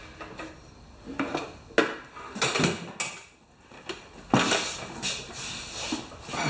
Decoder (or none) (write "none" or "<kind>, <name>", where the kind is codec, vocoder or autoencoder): none